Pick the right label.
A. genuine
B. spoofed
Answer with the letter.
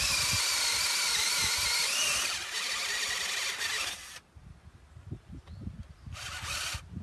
A